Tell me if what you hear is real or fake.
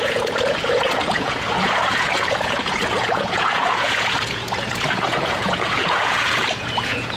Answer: fake